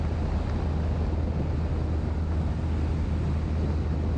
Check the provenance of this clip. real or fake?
real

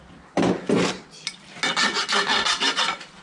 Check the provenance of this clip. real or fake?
real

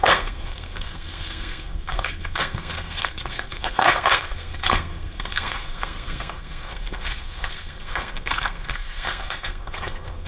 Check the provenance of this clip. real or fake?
fake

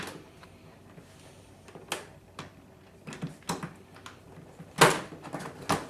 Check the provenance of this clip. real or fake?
real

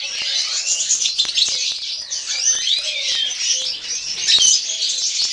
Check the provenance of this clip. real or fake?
real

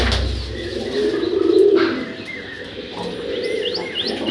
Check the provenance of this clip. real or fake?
real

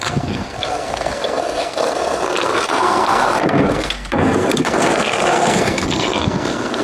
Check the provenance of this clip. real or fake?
fake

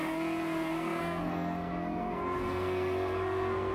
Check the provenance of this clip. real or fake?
fake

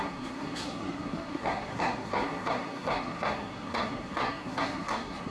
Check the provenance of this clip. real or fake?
fake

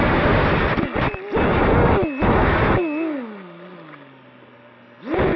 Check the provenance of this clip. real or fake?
real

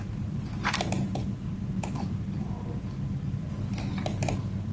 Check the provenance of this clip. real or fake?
real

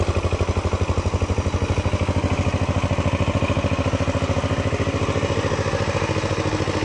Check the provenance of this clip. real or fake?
real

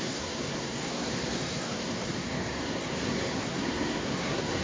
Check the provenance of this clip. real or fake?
fake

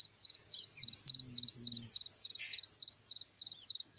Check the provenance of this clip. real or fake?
real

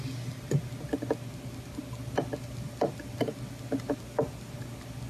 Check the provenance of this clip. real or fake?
real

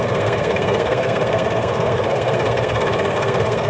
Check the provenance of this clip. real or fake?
fake